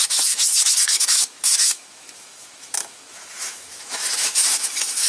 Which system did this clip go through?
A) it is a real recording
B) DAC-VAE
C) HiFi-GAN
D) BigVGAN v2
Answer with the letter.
B